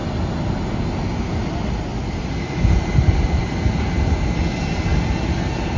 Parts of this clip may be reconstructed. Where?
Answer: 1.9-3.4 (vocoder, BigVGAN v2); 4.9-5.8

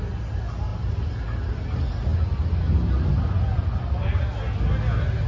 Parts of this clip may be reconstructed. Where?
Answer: 3.5-4.2 (vocoder, BigVGAN v2)

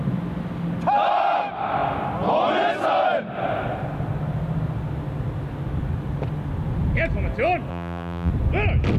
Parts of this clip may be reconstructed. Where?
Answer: 7.7-8.3 (vocoder, BigVGAN v2)

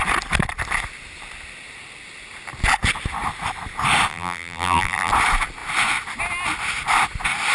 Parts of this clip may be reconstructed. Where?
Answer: 4.1-5.1 (vocoder, BigVGAN v2)